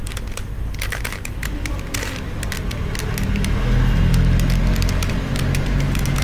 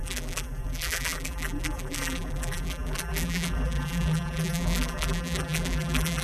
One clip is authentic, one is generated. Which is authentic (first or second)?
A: first